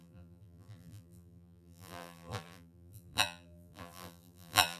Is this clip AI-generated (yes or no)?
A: yes